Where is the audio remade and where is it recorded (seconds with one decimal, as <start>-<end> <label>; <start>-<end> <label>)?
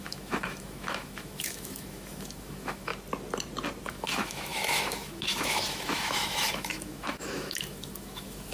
0.0-2.9 remade; 2.9-3.9 recorded; 3.9-8.5 remade